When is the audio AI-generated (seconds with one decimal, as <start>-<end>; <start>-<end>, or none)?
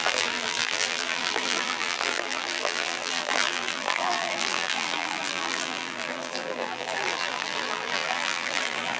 0.0-9.0